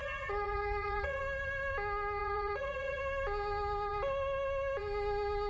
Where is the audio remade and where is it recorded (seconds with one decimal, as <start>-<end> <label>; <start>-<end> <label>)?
0.0-1.2 remade; 1.2-2.2 recorded; 2.2-3.0 remade; 3.0-5.5 recorded